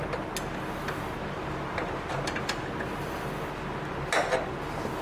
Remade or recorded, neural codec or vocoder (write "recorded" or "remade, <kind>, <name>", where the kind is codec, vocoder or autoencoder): recorded